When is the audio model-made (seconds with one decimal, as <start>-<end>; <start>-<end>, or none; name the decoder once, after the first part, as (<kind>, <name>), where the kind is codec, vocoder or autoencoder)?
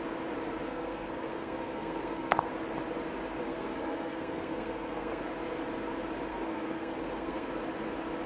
0.7-2.5 (codec, SNAC); 3.4-5.2; 6.3-7.5